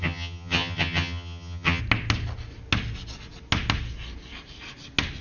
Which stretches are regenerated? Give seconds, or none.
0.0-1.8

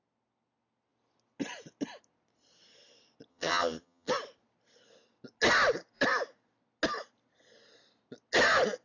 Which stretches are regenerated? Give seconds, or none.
3.3-4.1